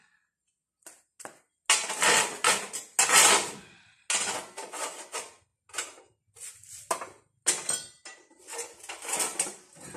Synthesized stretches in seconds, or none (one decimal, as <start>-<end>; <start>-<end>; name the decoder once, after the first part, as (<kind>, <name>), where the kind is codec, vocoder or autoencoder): none

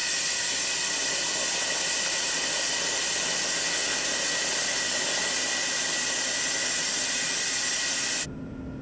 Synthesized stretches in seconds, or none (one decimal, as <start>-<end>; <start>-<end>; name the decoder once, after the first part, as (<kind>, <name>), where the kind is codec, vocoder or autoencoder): none

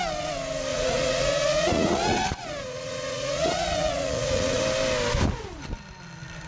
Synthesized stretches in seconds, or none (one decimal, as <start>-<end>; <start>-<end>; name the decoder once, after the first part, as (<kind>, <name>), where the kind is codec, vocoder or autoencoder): 0.7-4.6 (vocoder, Vocos)

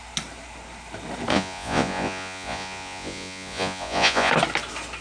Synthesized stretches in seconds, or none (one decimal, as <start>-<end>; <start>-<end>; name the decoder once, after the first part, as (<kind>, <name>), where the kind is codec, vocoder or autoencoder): 1.3-4.3 (vocoder, Vocos)

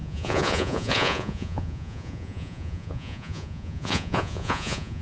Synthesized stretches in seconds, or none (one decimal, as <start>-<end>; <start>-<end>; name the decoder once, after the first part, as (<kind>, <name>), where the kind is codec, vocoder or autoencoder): 0.0-5.0 (vocoder, Vocos)

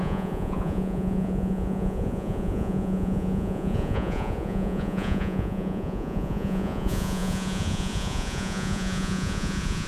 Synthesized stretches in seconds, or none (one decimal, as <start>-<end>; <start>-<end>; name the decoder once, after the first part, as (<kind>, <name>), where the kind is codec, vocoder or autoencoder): 0.0-9.9 (vocoder, Vocos)

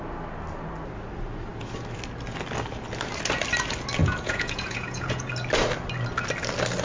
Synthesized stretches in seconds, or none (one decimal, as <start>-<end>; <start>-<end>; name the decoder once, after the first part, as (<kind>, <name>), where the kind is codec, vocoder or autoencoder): 4.0-5.3 (vocoder, Vocos)